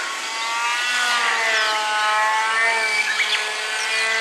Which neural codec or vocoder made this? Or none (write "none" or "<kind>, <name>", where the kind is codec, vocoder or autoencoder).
none